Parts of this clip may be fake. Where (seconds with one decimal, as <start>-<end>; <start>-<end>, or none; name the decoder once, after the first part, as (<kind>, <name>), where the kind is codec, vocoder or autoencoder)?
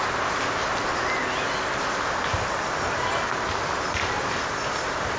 none